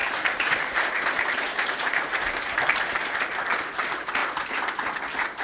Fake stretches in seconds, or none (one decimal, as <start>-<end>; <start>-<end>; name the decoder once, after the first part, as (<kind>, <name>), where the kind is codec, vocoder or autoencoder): 0.0-3.2 (vocoder, BigVGAN v2)